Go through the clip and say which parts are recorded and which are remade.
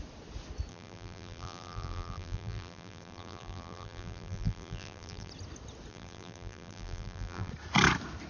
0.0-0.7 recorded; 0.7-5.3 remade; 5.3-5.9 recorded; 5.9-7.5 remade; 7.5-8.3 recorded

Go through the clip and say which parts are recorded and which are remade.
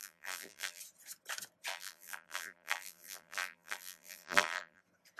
0.0-0.8 remade; 0.8-1.7 recorded; 1.7-4.8 remade; 4.8-5.2 recorded